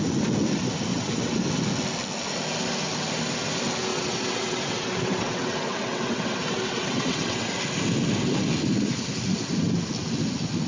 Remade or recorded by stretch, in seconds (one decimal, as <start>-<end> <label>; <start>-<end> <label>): 0.0-0.9 recorded; 0.9-1.5 remade; 1.5-3.9 recorded; 3.9-7.5 remade; 7.5-10.7 recorded